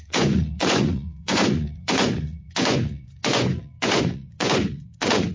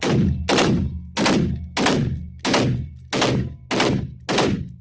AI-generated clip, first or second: first